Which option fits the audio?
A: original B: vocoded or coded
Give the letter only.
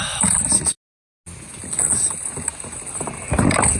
A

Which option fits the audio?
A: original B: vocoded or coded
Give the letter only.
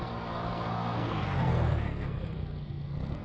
B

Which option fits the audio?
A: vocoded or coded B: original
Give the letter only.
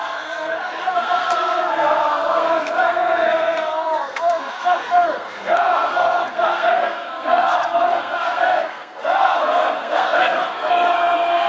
A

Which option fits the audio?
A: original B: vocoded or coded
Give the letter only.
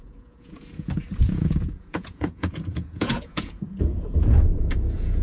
B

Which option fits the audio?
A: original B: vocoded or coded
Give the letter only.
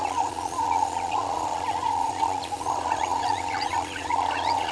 B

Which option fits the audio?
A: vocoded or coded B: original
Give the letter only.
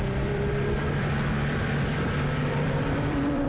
A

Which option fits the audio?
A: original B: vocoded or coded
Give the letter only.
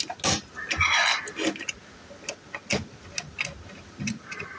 A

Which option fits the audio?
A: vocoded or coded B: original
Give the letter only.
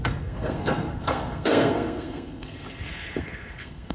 A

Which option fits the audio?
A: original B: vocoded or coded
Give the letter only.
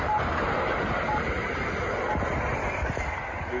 A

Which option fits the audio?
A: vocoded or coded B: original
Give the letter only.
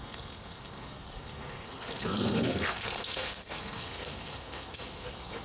A